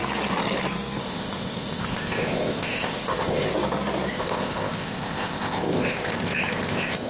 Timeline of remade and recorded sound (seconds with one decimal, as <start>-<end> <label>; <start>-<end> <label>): 0.0-1.0 recorded; 1.0-3.5 remade; 3.5-4.1 recorded; 4.1-7.1 remade